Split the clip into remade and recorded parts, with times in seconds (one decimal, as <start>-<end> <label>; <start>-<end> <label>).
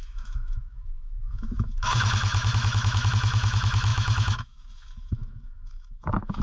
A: 0.0-6.4 remade